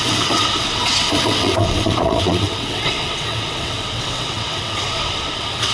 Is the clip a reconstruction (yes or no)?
yes